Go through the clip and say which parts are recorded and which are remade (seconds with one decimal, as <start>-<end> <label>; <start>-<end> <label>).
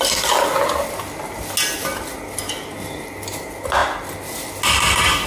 0.0-5.3 recorded